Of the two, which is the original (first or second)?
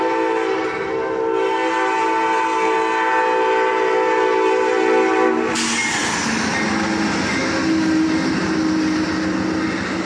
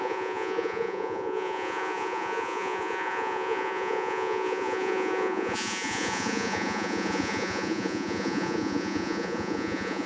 first